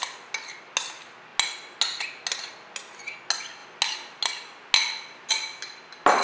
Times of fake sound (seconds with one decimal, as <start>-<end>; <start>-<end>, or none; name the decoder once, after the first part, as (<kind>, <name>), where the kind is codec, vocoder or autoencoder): none